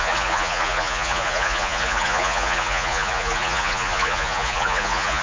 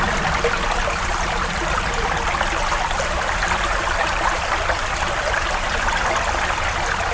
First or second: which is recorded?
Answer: second